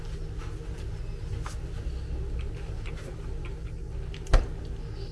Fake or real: real